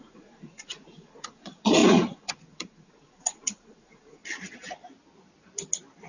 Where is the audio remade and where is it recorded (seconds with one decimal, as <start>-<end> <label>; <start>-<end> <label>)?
0.0-4.2 remade; 4.2-6.1 recorded

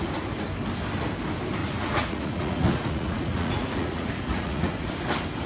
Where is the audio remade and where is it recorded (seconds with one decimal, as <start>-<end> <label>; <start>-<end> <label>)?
0.0-1.6 recorded; 1.6-4.9 remade; 4.9-5.5 recorded

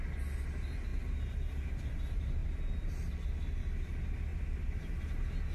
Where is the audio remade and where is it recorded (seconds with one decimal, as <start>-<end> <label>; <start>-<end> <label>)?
0.0-4.3 recorded; 4.3-4.9 remade; 4.9-5.5 recorded

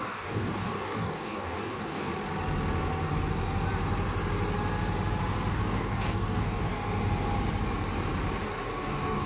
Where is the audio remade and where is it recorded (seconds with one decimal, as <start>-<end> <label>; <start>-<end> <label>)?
0.0-2.1 remade; 2.1-5.5 recorded; 5.5-6.7 remade; 6.7-8.9 recorded; 8.9-9.3 remade

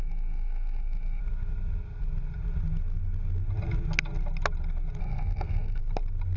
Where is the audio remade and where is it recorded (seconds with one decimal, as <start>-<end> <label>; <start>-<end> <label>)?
0.0-1.2 remade; 1.2-5.0 recorded; 5.0-5.8 remade; 5.8-6.4 recorded

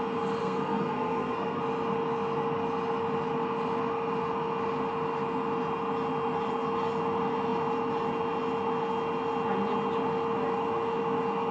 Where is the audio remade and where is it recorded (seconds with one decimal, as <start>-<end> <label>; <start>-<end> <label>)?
0.0-0.4 recorded; 0.4-1.6 remade; 1.6-11.5 recorded